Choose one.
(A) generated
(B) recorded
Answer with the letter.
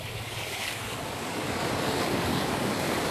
A